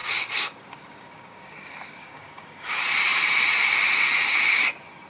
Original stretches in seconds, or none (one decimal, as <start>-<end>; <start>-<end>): 2.7-5.1